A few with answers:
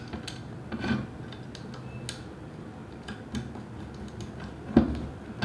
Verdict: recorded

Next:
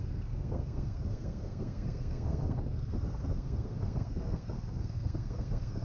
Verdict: remade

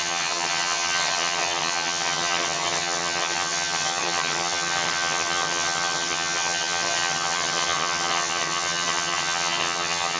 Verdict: remade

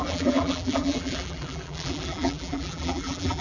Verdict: remade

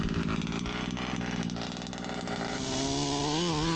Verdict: recorded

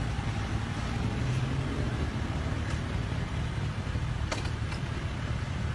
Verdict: recorded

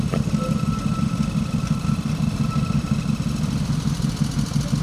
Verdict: recorded